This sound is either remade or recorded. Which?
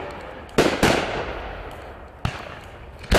recorded